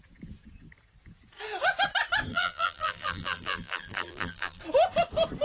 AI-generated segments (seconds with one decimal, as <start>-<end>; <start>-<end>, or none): 2.3-4.6